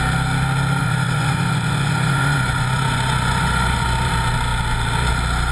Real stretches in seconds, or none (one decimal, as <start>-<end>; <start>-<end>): 0.0-0.8; 4.1-5.5